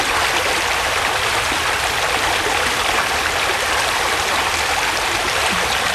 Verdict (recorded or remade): recorded